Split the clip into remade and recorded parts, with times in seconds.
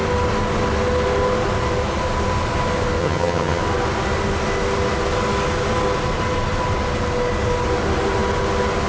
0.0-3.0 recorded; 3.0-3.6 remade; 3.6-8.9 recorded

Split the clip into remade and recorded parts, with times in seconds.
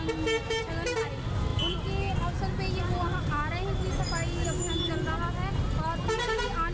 0.0-6.7 recorded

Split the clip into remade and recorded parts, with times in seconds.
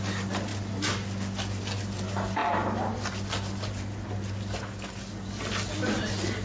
0.0-6.4 recorded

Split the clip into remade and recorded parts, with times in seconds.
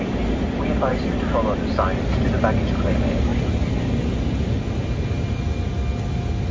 0.0-6.5 recorded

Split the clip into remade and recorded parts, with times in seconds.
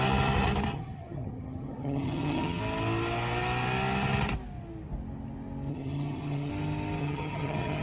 0.0-0.7 recorded; 0.7-2.6 remade; 2.6-5.7 recorded; 5.7-6.5 remade; 6.5-7.0 recorded; 7.0-7.8 remade